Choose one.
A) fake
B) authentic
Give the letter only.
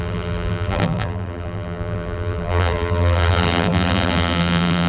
A